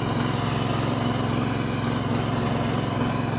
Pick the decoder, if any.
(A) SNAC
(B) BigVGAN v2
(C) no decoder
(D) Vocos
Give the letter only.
C